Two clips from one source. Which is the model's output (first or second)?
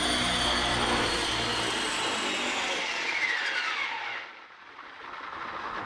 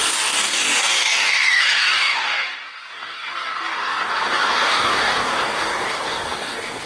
second